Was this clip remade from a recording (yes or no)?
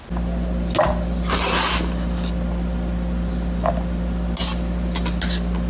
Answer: no